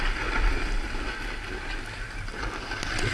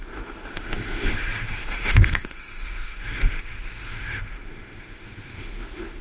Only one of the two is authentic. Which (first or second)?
first